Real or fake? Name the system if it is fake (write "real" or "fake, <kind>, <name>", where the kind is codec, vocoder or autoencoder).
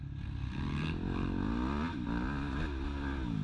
real